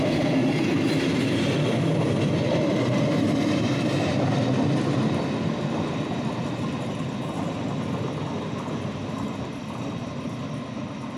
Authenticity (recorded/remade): recorded